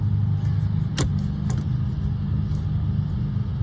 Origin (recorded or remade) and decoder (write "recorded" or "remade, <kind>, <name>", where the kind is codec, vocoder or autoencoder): recorded